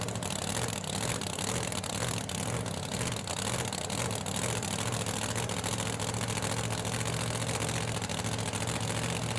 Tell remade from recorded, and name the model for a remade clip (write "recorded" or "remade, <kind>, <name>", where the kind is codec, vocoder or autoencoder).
recorded